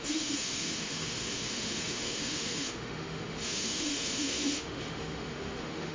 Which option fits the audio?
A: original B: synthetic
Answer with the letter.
B